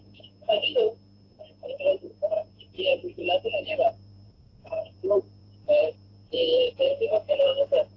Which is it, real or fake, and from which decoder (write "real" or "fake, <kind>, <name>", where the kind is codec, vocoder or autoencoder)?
fake, vocoder, Vocos